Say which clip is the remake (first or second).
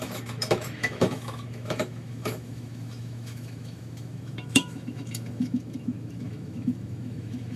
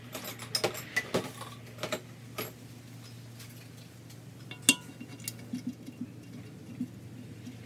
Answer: first